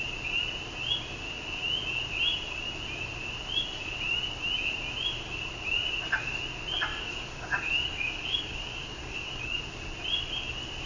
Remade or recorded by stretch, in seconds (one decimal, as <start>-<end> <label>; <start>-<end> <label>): 0.0-6.9 recorded; 6.9-9.6 remade; 9.6-10.9 recorded